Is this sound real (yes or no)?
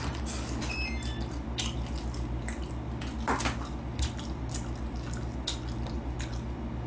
yes